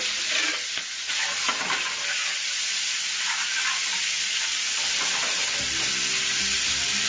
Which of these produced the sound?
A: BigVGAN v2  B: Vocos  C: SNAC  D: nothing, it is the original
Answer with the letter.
D